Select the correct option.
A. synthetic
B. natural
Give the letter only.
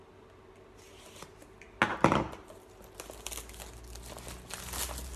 B